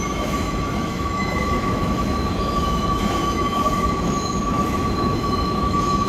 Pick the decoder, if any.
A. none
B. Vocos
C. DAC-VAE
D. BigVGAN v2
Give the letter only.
C